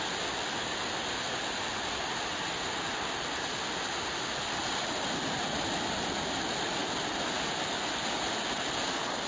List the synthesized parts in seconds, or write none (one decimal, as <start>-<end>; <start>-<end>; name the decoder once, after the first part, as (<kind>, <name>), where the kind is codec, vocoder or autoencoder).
none